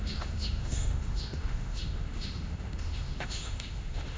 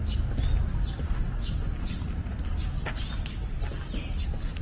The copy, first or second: first